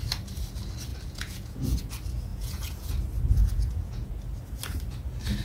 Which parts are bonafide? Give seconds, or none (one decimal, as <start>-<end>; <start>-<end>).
0.0-0.9; 1.8-2.3; 2.9-3.4; 4.1-5.4